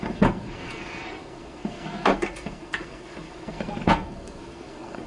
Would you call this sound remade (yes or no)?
yes